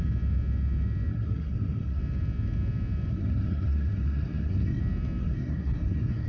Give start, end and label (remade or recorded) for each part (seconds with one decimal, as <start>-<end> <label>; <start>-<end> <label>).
0.0-1.1 recorded; 1.1-2.0 remade; 2.0-3.1 recorded; 3.1-4.8 remade; 4.8-5.2 recorded; 5.2-6.3 remade